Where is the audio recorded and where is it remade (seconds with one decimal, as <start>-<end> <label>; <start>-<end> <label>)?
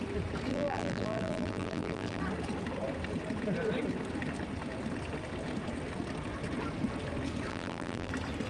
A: 0.0-0.5 recorded; 0.5-2.2 remade; 2.2-7.5 recorded; 7.5-8.1 remade; 8.1-8.5 recorded